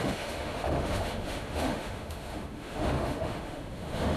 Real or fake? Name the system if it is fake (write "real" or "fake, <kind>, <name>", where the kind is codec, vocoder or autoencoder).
fake, autoencoder, DAC-VAE